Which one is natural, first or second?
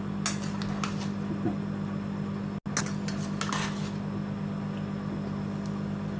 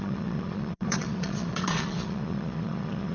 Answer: first